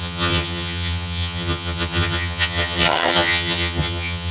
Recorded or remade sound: remade